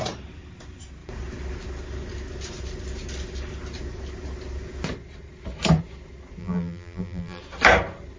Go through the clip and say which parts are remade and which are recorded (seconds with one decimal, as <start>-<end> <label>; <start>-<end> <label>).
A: 0.0-6.4 recorded; 6.4-7.4 remade; 7.4-8.2 recorded